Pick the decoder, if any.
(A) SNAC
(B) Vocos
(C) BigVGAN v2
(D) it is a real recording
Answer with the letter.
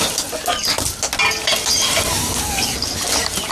D